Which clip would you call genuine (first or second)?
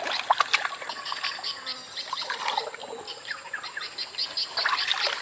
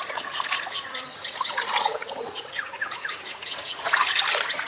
first